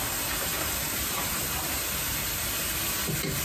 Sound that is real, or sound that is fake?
real